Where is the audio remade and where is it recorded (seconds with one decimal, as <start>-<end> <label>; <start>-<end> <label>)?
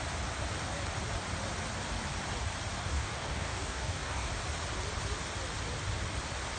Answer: 0.0-2.8 recorded; 2.8-4.3 remade; 4.3-6.6 recorded